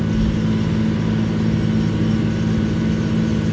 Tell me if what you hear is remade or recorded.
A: recorded